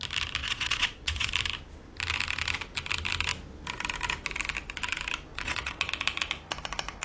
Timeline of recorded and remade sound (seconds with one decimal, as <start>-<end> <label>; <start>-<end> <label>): 0.0-0.4 recorded; 0.4-1.3 remade; 1.3-5.3 recorded; 5.3-5.9 remade; 5.9-7.0 recorded

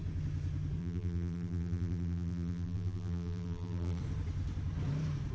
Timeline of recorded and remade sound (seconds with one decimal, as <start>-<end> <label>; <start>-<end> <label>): 0.0-0.8 recorded; 0.8-4.0 remade; 4.0-5.3 recorded

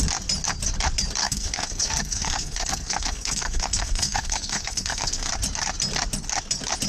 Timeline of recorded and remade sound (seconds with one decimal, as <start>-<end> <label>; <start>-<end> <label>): 0.0-1.2 recorded; 1.2-5.3 remade; 5.3-6.9 recorded

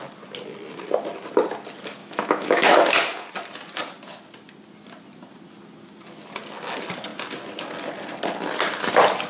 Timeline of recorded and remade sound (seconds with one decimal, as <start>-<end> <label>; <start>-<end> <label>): 0.0-2.0 recorded; 2.0-2.9 remade; 2.9-9.3 recorded

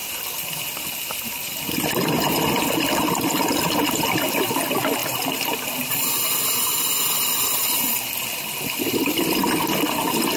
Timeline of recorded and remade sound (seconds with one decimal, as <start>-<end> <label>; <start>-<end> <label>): 0.0-10.4 recorded

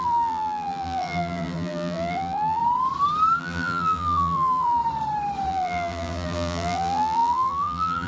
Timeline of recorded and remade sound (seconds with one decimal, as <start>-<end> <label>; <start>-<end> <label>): 0.0-2.6 remade; 2.6-3.4 recorded; 3.4-4.8 remade; 4.8-5.5 recorded; 5.5-8.1 remade

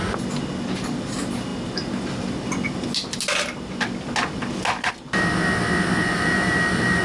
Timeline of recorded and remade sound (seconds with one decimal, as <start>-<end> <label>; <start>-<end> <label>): 0.0-6.1 recorded; 6.1-7.0 remade

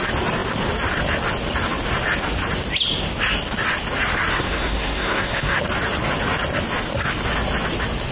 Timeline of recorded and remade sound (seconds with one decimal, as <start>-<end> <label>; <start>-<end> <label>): 0.0-4.3 recorded; 4.3-5.6 remade; 5.6-8.1 recorded